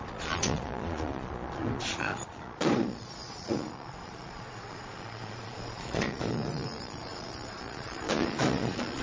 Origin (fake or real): fake